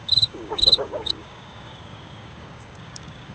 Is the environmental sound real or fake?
fake